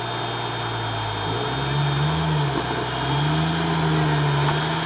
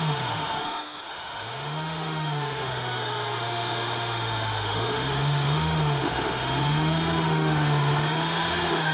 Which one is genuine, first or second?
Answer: first